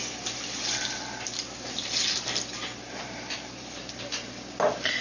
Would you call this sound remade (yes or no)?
no